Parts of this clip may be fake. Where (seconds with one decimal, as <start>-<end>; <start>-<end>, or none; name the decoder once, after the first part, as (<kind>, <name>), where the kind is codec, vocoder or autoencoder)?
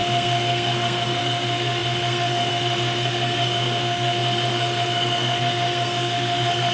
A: 0.0-6.7 (codec, SNAC)